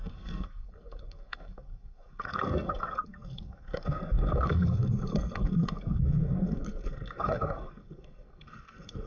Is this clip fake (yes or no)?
yes